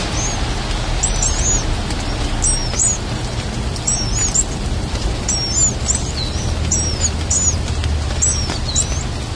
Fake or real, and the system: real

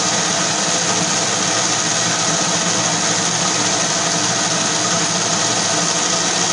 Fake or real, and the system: real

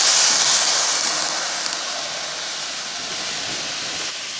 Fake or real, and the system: real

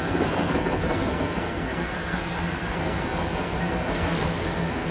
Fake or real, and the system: fake, codec, SNAC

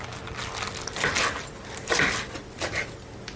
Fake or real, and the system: real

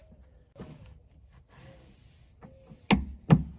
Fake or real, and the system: real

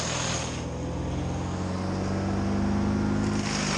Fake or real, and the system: real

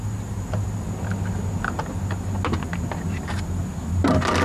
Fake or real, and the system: real